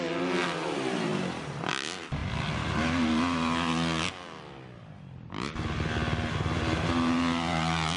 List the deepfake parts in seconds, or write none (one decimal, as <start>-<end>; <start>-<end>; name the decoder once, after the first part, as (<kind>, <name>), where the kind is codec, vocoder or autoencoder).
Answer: none